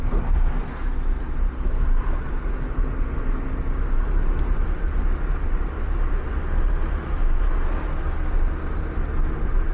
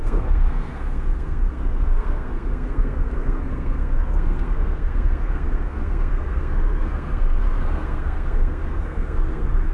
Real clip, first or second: first